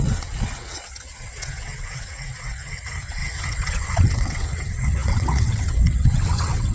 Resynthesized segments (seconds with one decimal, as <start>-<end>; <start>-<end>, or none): 0.0-6.7